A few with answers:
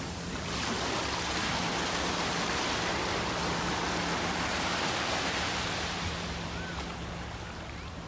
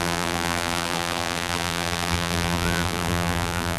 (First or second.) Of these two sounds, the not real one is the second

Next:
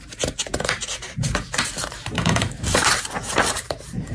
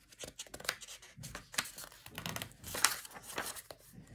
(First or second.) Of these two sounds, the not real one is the first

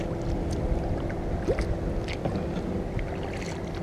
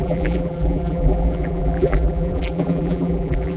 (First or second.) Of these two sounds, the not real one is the second